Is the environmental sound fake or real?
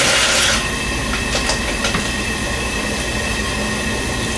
real